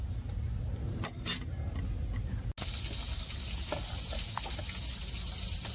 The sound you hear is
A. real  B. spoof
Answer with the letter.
A